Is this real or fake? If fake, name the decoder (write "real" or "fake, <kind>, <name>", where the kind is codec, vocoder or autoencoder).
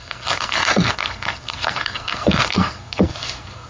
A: fake, codec, SNAC